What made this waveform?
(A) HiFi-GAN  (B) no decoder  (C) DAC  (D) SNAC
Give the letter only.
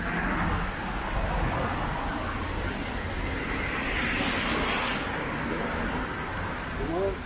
B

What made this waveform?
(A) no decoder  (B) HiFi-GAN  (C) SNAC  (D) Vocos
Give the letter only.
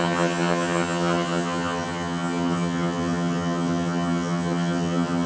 B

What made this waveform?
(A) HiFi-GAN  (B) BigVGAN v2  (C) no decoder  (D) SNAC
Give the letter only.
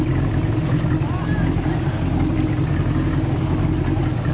C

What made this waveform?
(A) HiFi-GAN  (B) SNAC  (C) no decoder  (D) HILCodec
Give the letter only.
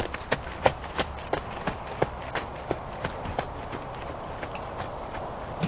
C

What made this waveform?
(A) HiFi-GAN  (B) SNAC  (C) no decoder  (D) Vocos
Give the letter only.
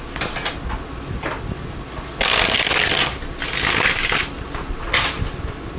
C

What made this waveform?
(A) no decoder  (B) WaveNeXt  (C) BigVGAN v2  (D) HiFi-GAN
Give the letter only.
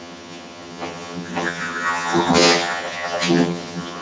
D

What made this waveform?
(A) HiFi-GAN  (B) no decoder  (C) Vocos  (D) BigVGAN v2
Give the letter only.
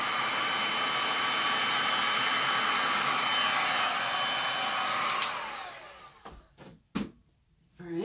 B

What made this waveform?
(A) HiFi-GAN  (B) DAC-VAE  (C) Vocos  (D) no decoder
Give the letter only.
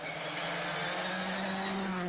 D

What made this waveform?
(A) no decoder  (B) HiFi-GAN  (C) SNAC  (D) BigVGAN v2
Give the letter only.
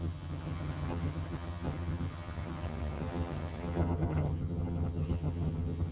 B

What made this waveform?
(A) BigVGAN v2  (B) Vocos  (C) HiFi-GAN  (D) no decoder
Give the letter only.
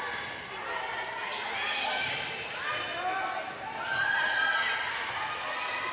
D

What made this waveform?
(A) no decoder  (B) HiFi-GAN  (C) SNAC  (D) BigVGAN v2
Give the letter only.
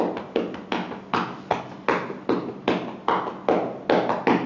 A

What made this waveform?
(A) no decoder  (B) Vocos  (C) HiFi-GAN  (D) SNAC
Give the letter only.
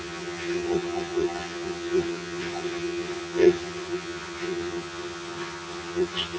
C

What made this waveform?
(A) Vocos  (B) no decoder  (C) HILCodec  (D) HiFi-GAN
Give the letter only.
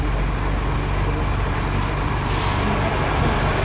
B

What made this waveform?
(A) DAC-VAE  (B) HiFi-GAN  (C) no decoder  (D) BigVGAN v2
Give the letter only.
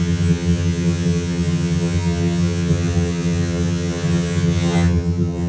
B